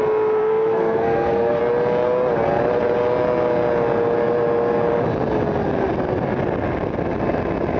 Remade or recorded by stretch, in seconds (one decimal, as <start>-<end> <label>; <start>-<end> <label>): 0.0-0.4 recorded; 0.4-1.6 remade; 1.6-7.8 recorded